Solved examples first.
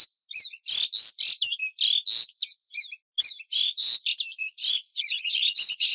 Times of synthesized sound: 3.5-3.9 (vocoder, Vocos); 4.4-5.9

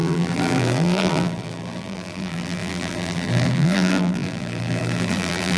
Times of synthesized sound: 0.0-5.6 (vocoder, BigVGAN v2)